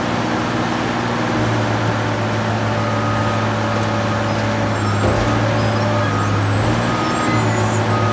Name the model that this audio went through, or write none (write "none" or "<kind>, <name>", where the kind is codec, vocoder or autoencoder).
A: none